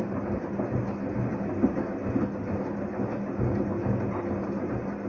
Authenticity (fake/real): real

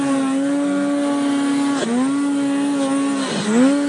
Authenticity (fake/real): real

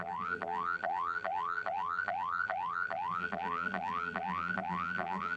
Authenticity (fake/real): fake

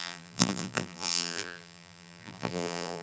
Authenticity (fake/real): fake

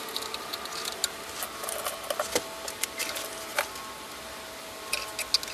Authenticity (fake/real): real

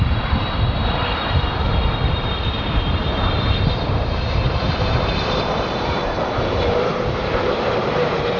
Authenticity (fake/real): fake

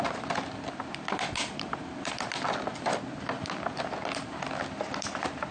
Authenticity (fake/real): real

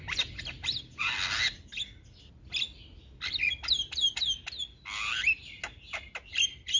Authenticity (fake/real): real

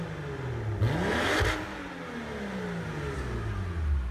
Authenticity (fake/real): real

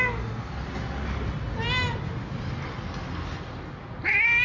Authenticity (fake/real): real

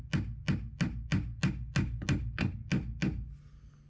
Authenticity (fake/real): real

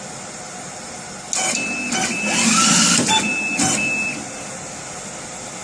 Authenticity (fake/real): real